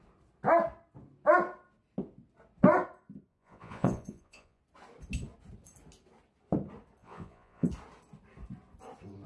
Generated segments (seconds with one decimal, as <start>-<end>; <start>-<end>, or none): 3.3-4.6; 7.0-7.7